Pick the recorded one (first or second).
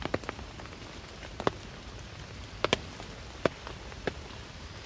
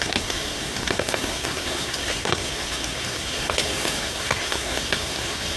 first